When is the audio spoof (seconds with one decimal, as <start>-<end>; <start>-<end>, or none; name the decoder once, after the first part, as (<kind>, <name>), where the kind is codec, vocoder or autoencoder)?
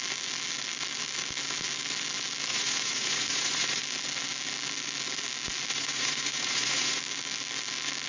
2.5-3.8 (vocoder, Vocos); 5.7-7.0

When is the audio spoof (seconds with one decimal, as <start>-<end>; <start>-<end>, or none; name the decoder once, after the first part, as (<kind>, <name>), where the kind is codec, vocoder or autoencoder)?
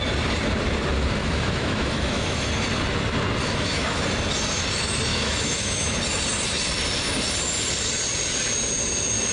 1.2-2.5 (autoencoder, DAC-VAE); 3.4-4.0; 5.1-6.0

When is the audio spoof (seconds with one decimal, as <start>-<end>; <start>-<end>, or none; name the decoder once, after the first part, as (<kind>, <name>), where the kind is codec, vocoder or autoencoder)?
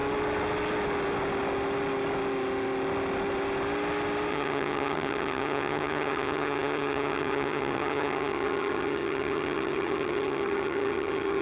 4.3-11.4 (vocoder, HiFi-GAN)